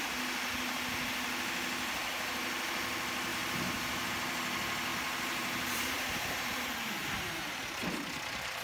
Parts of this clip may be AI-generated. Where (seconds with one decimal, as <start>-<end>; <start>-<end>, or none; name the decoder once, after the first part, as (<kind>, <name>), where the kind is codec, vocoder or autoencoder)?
3.3-4.1 (vocoder, BigVGAN v2); 4.9-7.8